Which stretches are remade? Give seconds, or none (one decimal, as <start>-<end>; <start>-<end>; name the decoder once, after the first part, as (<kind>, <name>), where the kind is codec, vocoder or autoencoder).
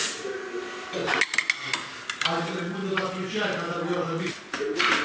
none